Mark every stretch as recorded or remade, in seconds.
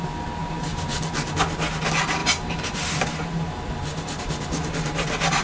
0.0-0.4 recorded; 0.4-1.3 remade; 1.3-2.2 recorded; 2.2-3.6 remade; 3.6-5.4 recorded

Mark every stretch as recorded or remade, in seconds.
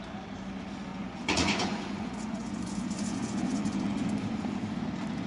0.0-0.9 recorded; 0.9-4.1 remade; 4.1-5.3 recorded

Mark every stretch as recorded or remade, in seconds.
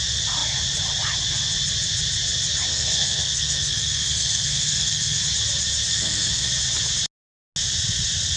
0.0-2.7 recorded; 2.7-5.2 remade; 5.2-5.9 recorded; 5.9-6.5 remade; 6.5-8.4 recorded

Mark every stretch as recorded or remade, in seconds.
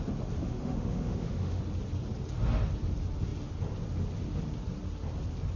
0.0-0.4 recorded; 0.4-1.6 remade; 1.6-5.6 recorded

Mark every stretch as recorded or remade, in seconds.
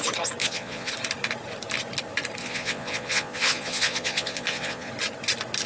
0.0-0.4 recorded; 0.4-0.9 remade; 0.9-2.4 recorded; 2.4-4.9 remade; 4.9-5.7 recorded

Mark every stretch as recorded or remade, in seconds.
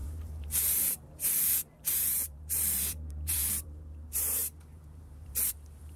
0.0-6.0 remade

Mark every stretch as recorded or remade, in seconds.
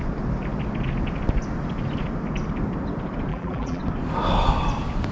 0.0-3.3 recorded; 3.3-3.8 remade; 3.8-5.1 recorded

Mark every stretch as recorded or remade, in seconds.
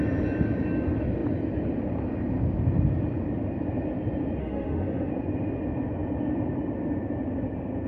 0.0-4.4 recorded; 4.4-5.1 remade; 5.1-7.9 recorded